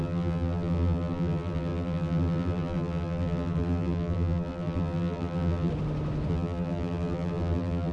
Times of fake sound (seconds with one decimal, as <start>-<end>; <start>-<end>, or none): 0.0-5.7; 6.3-7.9